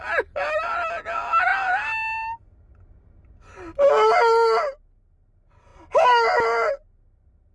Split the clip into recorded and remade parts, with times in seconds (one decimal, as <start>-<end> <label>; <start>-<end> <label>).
0.0-7.5 recorded